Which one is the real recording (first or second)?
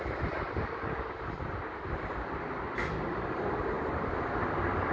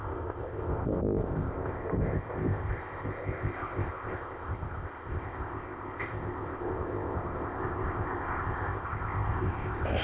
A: first